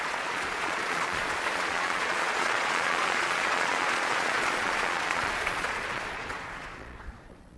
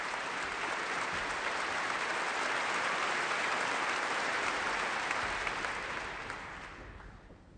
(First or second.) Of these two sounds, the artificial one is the first